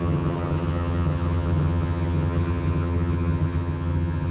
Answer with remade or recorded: remade